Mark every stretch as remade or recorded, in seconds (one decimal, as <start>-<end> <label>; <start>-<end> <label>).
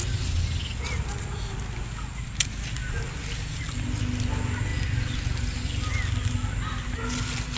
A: 0.0-7.6 recorded